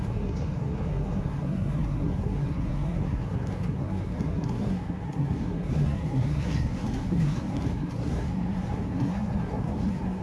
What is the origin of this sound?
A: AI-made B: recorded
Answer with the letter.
A